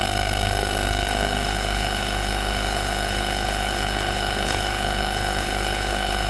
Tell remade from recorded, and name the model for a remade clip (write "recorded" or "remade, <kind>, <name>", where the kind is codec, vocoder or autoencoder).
remade, codec, HILCodec